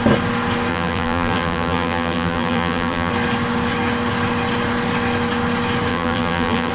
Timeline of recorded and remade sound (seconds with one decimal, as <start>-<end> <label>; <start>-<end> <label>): 0.0-0.7 recorded; 0.7-3.1 remade; 3.1-5.9 recorded; 5.9-6.7 remade

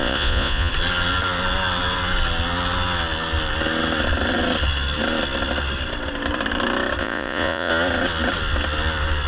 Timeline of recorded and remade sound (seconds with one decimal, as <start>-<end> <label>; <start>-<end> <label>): 0.0-0.7 remade; 0.7-7.0 recorded; 7.0-7.7 remade; 7.7-9.3 recorded